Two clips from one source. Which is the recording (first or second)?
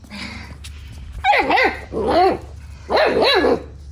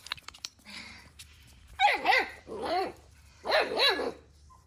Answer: first